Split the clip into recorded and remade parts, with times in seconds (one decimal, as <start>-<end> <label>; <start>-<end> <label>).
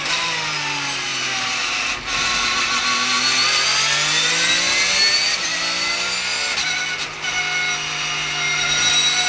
0.0-9.3 recorded